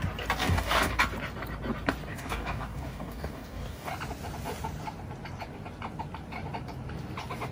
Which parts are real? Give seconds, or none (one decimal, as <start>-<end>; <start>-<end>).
0.0-0.4; 1.0-2.1; 3.9-7.5